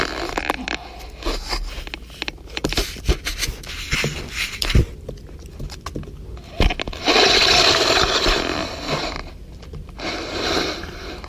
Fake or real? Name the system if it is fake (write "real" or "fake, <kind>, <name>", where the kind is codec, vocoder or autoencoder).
real